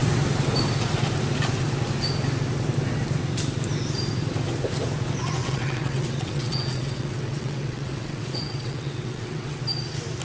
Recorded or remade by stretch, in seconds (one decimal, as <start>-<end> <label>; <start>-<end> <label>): 0.0-5.4 recorded; 5.4-9.6 remade; 9.6-10.2 recorded